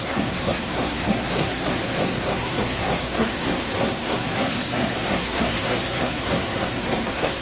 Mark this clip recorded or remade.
remade